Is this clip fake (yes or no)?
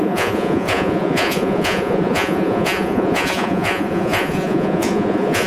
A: yes